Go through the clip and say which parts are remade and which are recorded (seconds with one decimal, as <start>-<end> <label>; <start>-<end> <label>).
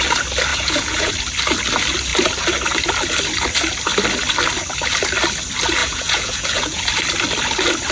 0.0-0.5 recorded; 0.5-1.1 remade; 1.1-5.8 recorded; 5.8-6.8 remade; 6.8-7.9 recorded